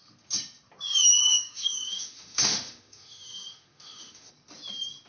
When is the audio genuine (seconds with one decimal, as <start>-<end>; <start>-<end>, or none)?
0.0-1.2; 4.3-5.1